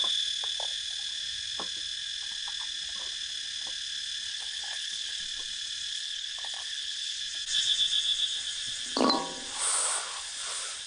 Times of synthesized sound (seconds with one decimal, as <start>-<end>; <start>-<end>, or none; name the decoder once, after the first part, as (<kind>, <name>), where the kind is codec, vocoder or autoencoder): 4.3-5.2 (codec, HILCodec); 5.9-7.2